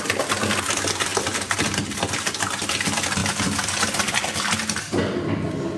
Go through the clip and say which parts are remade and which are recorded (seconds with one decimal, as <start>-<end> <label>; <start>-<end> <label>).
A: 0.0-1.1 recorded; 1.1-2.8 remade; 2.8-3.2 recorded; 3.2-5.0 remade; 5.0-5.8 recorded